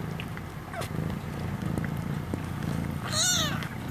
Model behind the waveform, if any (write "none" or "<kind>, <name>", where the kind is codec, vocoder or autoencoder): none